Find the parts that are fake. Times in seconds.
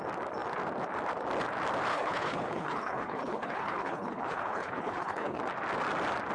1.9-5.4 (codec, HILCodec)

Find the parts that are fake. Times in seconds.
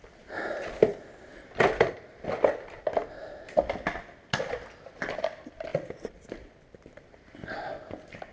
none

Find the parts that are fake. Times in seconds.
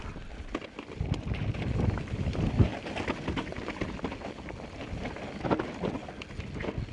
none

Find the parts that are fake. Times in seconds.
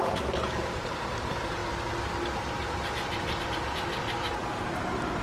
0.0-1.6 (vocoder, BigVGAN v2); 4.7-5.2